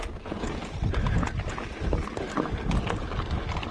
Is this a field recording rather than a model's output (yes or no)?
yes